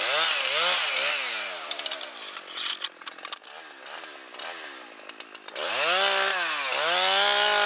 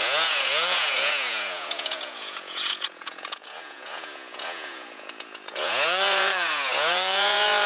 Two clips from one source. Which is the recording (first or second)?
first